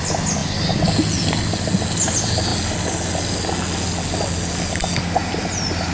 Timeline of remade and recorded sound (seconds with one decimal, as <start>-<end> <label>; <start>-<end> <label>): 0.0-5.9 recorded